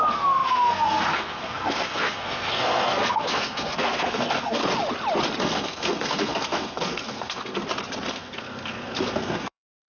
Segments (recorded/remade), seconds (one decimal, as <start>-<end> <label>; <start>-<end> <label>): 0.0-4.6 remade; 4.6-5.4 recorded; 5.4-7.6 remade; 7.6-8.1 recorded; 8.1-9.9 remade